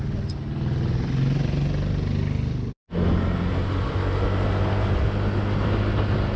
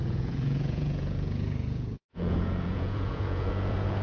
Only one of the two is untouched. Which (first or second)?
first